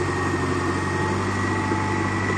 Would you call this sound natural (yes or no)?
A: yes